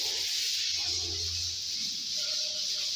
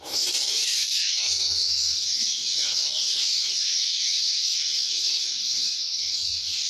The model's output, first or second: second